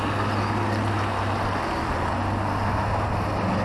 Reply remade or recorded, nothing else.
recorded